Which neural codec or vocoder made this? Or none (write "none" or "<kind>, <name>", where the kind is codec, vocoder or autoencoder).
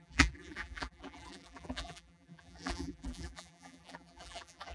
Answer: vocoder, BigVGAN v2